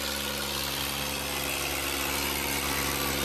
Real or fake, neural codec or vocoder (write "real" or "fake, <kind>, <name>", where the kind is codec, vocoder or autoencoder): real